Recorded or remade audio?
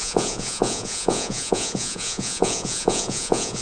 remade